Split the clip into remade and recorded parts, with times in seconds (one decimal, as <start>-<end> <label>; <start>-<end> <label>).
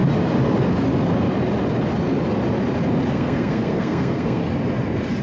0.0-3.1 recorded; 3.1-4.4 remade; 4.4-5.2 recorded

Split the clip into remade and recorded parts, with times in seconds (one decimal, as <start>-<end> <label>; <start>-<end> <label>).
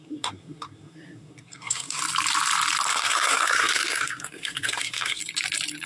0.0-2.0 remade; 2.0-2.9 recorded; 2.9-5.2 remade; 5.2-5.9 recorded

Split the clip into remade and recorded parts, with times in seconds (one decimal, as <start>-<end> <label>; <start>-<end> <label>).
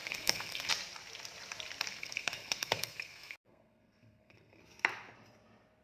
0.0-0.7 remade; 0.7-1.9 recorded; 1.9-4.6 remade; 4.6-5.8 recorded